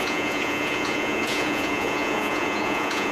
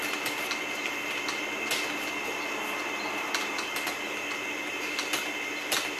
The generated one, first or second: first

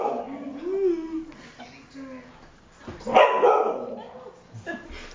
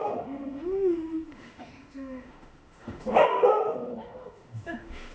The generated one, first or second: second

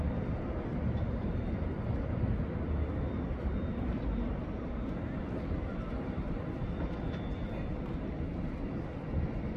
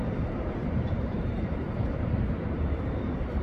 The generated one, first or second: second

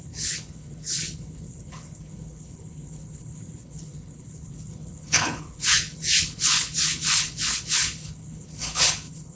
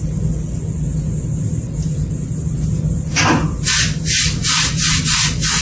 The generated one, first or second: first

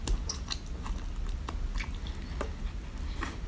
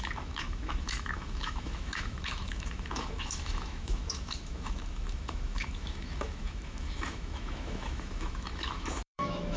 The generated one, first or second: second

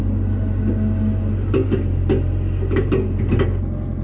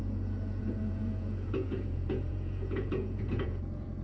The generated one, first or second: second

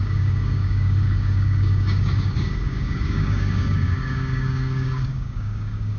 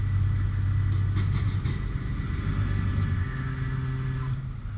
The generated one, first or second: first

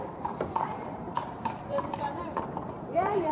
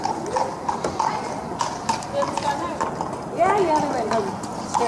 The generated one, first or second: first